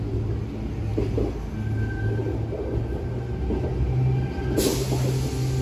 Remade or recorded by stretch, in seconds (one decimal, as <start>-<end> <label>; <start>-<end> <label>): 0.0-5.6 recorded